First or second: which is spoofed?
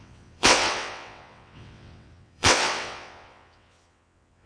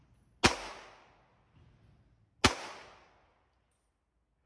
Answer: first